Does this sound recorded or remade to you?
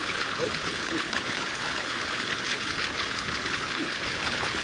remade